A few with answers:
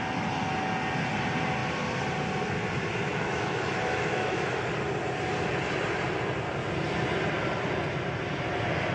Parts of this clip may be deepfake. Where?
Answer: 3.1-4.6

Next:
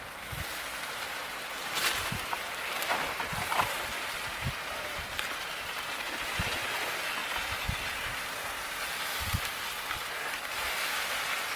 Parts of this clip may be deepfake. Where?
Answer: 0.7-5.4

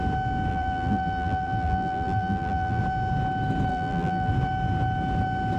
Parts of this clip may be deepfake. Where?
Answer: 0.5-2.8; 3.7-4.3

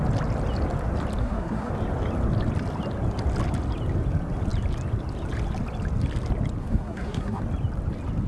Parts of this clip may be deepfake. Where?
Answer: 1.2-1.7; 6.6-7.4

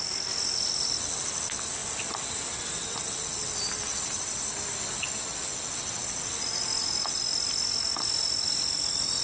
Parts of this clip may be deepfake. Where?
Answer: none

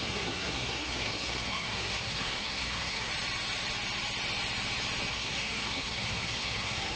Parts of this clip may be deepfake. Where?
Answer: 0.0-3.1; 5.1-7.0